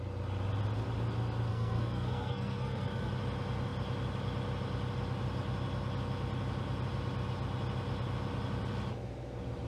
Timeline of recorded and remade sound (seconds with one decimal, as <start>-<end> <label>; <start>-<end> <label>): 0.0-1.5 recorded; 1.5-3.1 remade; 3.1-9.7 recorded

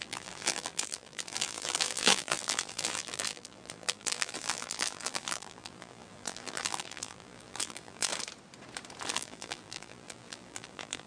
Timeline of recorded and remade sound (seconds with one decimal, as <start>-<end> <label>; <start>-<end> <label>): 0.0-8.1 remade; 8.1-9.1 recorded; 9.1-11.1 remade

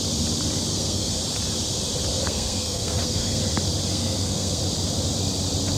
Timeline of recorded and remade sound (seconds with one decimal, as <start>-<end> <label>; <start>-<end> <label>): 0.0-0.7 recorded; 0.7-1.2 remade; 1.2-2.1 recorded; 2.1-3.4 remade; 3.4-3.9 recorded; 3.9-4.6 remade; 4.6-5.8 recorded

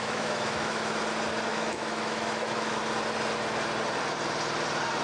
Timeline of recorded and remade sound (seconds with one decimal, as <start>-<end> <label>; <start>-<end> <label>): 0.0-1.0 remade; 1.0-1.5 recorded; 1.5-2.8 remade; 2.8-5.0 recorded

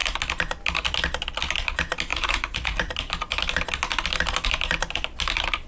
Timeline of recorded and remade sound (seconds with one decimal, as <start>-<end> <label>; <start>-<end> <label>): 0.0-2.1 recorded; 2.1-2.9 remade; 2.9-5.7 recorded

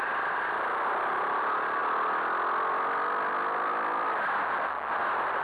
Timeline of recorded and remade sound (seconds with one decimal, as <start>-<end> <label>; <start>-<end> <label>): 0.0-5.4 recorded